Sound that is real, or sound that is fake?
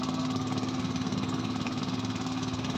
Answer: fake